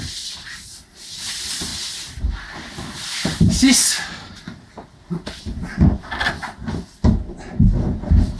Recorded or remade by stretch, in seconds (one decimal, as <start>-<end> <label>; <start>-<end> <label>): 0.0-1.7 remade; 1.7-5.4 recorded; 5.4-6.6 remade; 6.6-7.3 recorded; 7.3-8.4 remade